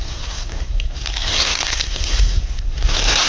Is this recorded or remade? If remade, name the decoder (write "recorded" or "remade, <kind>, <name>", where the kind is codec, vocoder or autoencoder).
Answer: remade, codec, SNAC